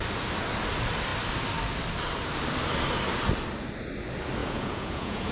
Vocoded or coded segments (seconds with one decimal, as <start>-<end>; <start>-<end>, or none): 4.4-5.3